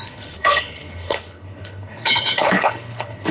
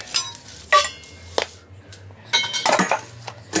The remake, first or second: first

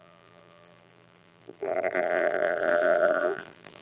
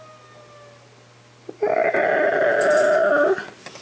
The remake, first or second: first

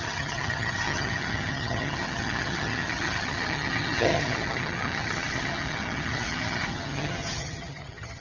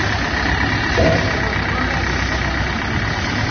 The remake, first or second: first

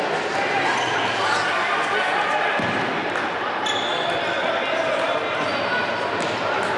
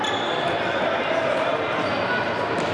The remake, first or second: second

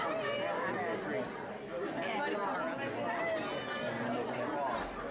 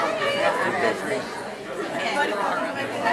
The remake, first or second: second